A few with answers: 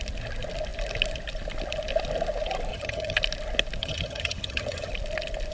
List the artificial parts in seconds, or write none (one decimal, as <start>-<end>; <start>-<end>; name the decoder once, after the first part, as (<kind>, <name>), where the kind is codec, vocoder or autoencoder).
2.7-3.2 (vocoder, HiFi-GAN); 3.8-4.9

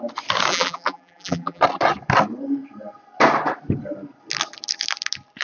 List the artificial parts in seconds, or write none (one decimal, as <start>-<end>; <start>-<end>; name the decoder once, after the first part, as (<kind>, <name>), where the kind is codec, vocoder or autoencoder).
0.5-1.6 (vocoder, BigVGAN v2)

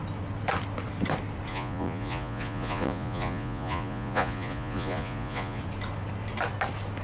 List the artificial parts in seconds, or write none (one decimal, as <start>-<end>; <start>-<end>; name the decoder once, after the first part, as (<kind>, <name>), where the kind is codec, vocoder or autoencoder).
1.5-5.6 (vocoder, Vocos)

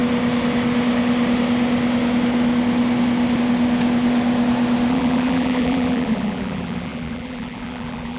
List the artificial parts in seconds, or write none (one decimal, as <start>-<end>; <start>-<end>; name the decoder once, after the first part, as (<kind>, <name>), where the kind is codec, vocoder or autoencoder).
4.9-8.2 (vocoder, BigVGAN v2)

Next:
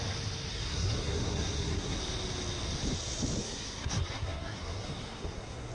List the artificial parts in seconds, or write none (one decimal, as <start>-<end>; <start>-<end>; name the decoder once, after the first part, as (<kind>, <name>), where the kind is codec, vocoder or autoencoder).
0.5-2.0 (codec, SNAC); 3.4-5.7